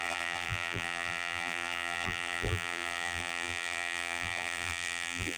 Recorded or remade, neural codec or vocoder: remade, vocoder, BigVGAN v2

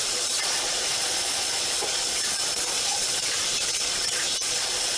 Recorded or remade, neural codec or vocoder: remade, vocoder, Vocos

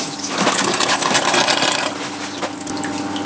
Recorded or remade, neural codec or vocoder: recorded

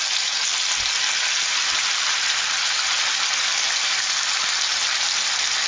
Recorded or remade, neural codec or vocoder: recorded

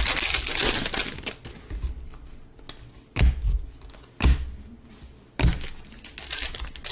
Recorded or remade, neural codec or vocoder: recorded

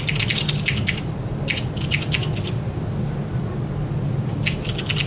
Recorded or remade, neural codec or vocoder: recorded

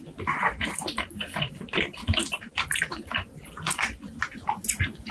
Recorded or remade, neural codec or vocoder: remade, vocoder, BigVGAN v2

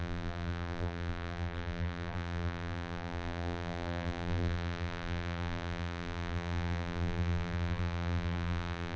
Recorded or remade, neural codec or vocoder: remade, vocoder, BigVGAN v2